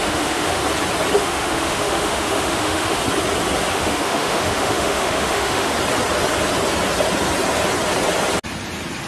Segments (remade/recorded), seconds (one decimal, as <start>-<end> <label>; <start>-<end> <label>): 0.0-0.6 remade; 0.6-1.2 recorded; 1.2-3.0 remade; 3.0-3.7 recorded; 3.7-5.7 remade; 5.7-9.1 recorded